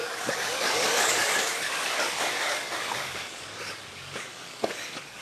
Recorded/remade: remade